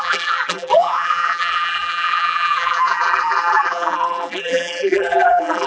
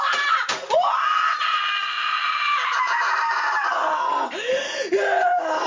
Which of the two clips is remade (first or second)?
first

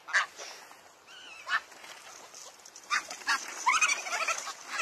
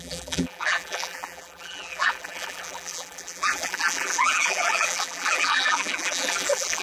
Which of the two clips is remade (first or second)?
second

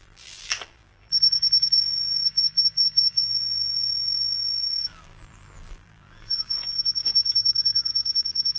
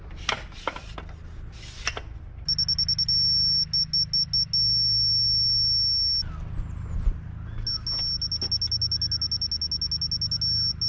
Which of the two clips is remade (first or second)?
first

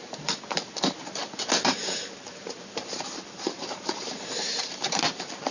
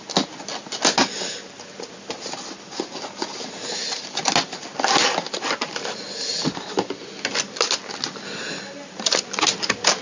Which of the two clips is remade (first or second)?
first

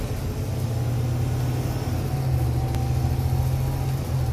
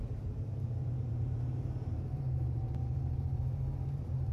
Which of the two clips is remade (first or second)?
second